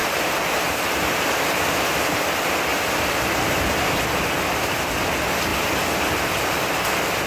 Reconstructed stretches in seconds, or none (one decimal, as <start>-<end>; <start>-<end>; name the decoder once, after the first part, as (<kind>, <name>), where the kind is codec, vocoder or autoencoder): 0.0-2.2 (vocoder, BigVGAN v2)